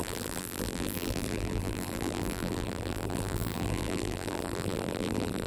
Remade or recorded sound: remade